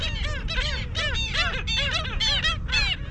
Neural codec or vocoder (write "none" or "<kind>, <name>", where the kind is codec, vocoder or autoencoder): none